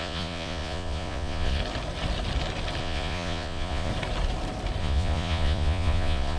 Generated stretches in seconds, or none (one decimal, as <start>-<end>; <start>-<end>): 0.0-1.6; 2.8-3.9; 4.8-6.4